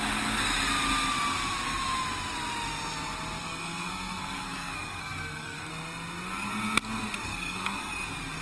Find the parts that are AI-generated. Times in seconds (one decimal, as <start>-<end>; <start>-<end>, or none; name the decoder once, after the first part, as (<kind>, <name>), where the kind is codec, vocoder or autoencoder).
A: 3.4-5.7 (codec, SNAC); 7.3-7.9